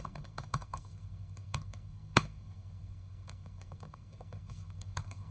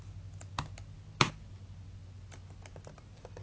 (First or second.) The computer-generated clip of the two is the first